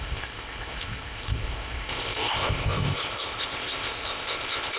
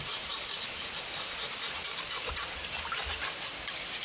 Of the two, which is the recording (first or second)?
second